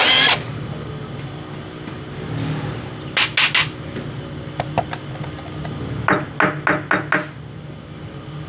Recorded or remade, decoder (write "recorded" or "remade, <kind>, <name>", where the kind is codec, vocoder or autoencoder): recorded